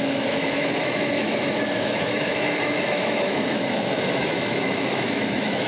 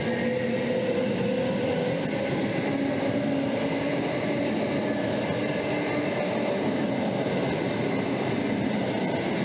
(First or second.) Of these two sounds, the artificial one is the first